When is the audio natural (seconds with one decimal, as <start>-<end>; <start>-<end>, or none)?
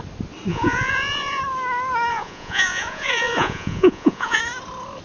0.0-0.5; 1.4-2.1; 4.4-5.0